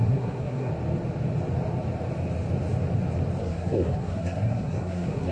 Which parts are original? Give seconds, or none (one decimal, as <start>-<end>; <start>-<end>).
0.7-3.4